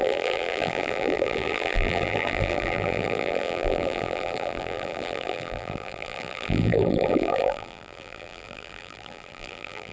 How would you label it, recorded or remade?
remade